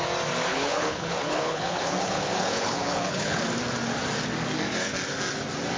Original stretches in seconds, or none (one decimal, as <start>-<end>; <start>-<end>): 0.0-0.5; 3.4-5.8